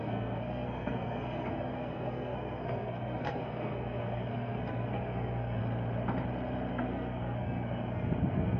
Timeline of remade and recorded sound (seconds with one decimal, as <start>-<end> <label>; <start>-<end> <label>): 0.0-5.6 remade; 5.6-6.7 recorded; 6.7-8.6 remade